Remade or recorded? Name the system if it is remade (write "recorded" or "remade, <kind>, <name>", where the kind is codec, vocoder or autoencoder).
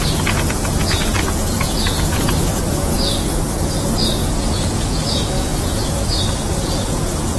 remade, vocoder, Vocos